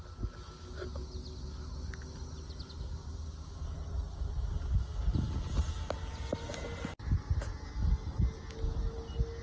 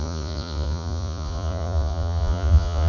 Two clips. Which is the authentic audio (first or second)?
first